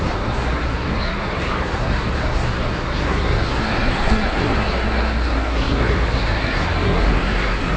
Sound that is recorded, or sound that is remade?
remade